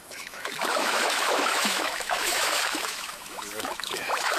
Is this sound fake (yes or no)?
yes